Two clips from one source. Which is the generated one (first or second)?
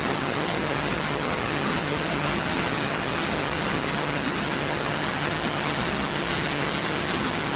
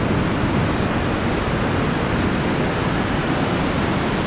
first